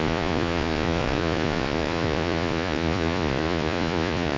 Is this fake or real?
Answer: fake